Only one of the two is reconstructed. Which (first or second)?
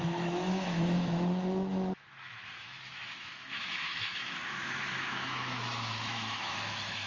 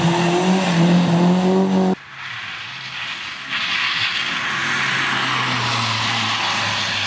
first